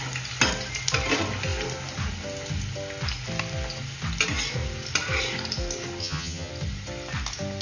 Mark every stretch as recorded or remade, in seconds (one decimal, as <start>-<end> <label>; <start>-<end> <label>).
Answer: 0.0-6.0 recorded; 6.0-6.5 remade; 6.5-7.6 recorded